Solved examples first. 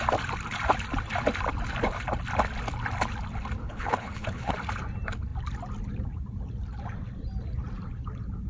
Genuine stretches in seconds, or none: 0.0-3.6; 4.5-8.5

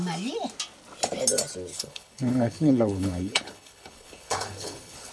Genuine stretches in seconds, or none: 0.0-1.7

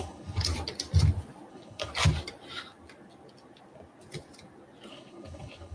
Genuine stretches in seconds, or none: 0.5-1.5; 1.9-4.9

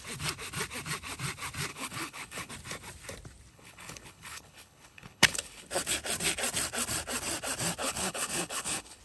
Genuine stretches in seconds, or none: 0.0-1.7; 2.5-3.5; 5.7-7.8

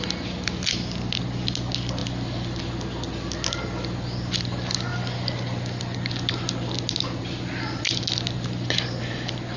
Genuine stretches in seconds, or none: 0.0-9.6

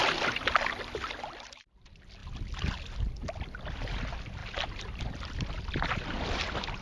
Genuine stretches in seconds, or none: 0.0-6.8

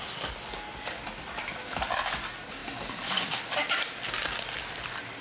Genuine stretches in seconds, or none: 0.0-5.2

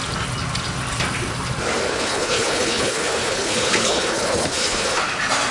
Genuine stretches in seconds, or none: 0.0-1.9; 5.0-5.5